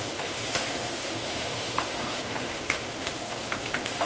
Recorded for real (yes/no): no